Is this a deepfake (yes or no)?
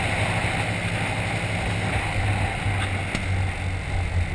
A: no